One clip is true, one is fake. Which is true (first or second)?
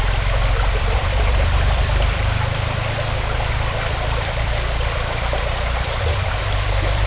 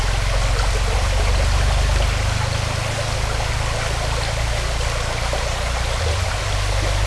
second